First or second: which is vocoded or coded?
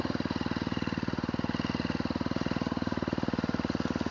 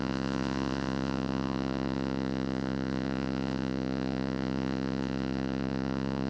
second